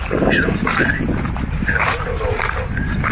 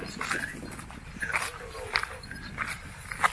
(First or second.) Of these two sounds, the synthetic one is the first